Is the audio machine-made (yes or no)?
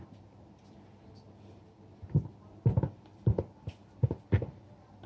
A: no